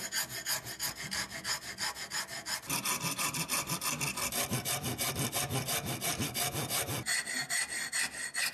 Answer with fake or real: real